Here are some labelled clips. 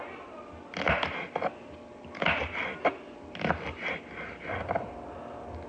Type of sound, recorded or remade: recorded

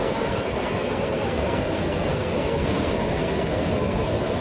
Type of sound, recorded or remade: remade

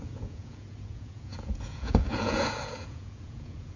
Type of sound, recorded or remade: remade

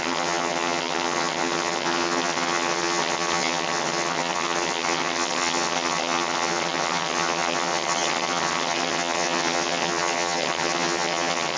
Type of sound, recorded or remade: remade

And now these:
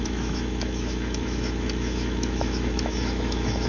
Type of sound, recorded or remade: remade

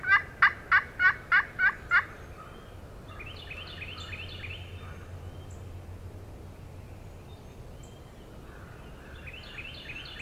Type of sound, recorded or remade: recorded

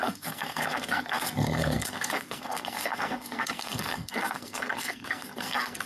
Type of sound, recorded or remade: remade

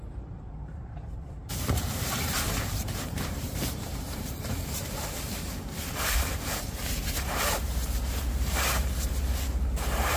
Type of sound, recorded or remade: remade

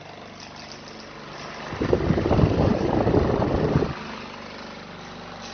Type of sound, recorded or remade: recorded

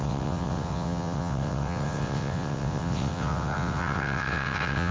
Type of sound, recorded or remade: remade